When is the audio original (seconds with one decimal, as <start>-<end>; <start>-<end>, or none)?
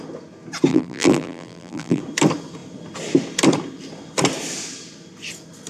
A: 0.0-0.7; 2.0-5.7